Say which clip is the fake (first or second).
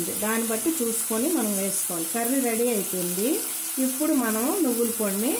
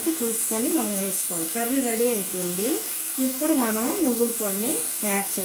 second